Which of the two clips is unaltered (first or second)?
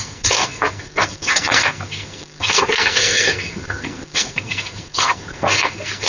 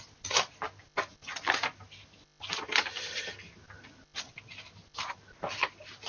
second